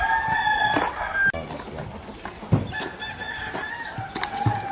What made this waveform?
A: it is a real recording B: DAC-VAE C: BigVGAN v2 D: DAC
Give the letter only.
A